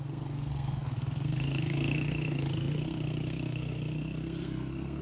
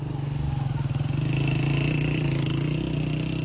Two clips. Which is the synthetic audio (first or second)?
first